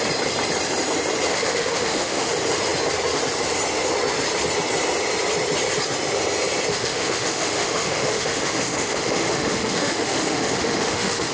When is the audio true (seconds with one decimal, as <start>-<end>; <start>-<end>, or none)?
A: 0.0-1.3; 2.3-6.7